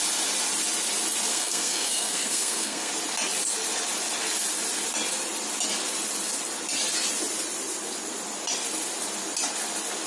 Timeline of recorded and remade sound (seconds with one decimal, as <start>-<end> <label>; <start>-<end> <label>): 0.0-1.3 recorded; 1.3-2.9 remade; 2.9-10.1 recorded